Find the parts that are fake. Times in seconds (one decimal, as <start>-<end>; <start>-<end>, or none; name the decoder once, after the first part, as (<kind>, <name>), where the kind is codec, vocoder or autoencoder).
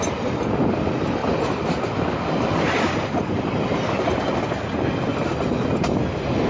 none